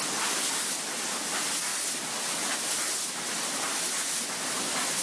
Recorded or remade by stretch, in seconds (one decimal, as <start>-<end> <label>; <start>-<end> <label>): 0.0-5.0 recorded